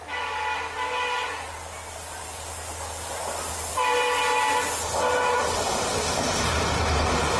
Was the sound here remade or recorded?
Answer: recorded